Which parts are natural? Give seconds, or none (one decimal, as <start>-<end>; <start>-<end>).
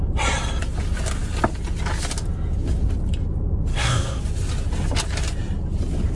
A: 0.0-3.7; 4.2-6.2